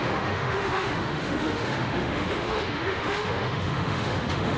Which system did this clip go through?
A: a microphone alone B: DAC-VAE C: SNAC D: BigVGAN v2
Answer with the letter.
B